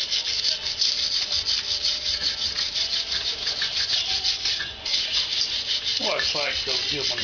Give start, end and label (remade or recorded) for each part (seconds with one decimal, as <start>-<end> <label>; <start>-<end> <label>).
0.0-1.8 recorded; 1.8-5.8 remade; 5.8-7.2 recorded